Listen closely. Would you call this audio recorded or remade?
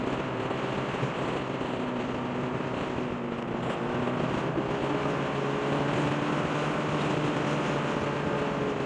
recorded